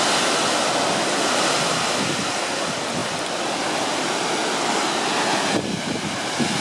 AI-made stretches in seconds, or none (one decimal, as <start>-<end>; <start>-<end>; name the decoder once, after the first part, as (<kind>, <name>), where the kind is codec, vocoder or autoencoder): none